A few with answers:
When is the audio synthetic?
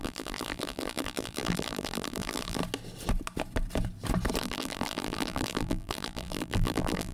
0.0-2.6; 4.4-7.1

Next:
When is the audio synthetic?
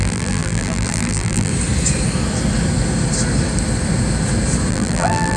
0.0-1.5; 4.7-5.4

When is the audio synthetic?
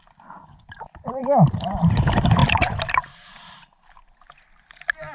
1.2-1.9; 2.4-4.0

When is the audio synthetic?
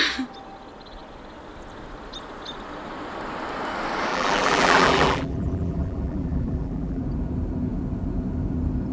4.1-7.0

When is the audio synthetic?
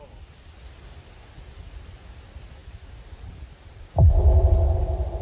2.6-5.2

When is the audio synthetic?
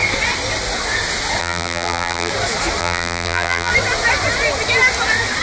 1.4-2.3; 2.8-3.7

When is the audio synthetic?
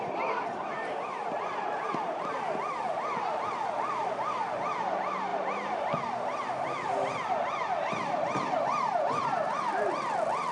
0.0-10.5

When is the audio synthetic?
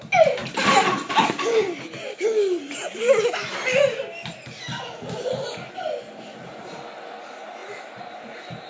2.8-3.4